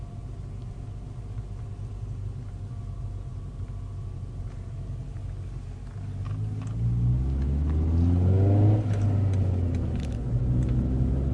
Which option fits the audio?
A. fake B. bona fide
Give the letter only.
B